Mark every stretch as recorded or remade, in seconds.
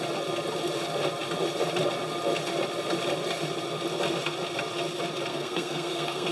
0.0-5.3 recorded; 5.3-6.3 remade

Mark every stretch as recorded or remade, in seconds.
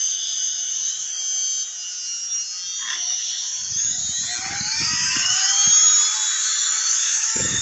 0.0-1.2 remade; 1.2-2.9 recorded; 2.9-4.0 remade; 4.0-4.5 recorded; 4.5-5.4 remade; 5.4-6.5 recorded; 6.5-7.6 remade